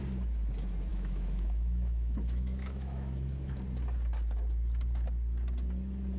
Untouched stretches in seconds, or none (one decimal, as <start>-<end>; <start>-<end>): 0.0-0.9; 3.6-6.2